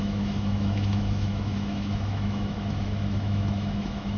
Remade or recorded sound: remade